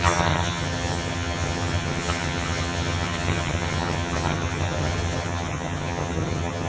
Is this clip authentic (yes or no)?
no